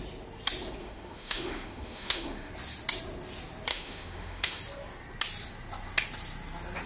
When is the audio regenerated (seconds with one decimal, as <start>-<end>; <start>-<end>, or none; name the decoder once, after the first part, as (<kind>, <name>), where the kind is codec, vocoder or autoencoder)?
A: 0.8-2.5 (autoencoder, DAC-VAE); 3.7-4.6